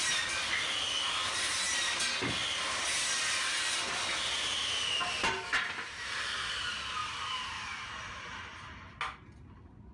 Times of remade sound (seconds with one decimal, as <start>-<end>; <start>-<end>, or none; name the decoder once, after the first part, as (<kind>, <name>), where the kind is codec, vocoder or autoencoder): 7.0-9.0 (vocoder, BigVGAN v2)